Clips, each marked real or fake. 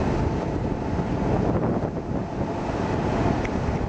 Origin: real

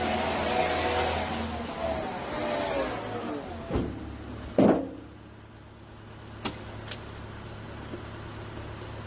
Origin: real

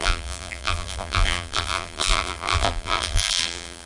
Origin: fake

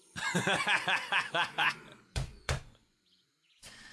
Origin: fake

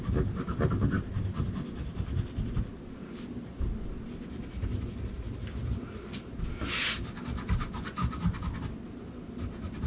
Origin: real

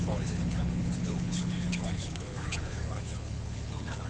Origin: fake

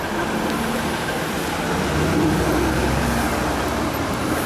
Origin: real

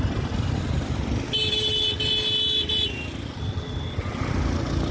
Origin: real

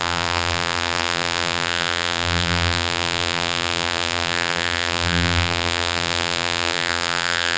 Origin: fake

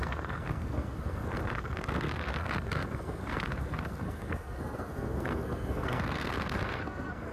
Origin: fake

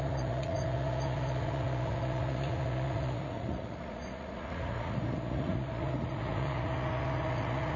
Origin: fake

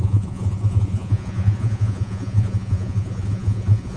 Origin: fake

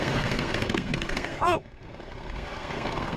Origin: fake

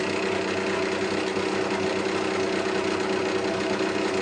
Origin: real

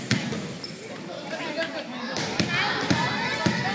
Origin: real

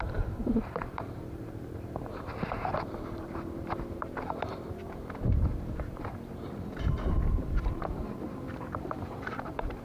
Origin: fake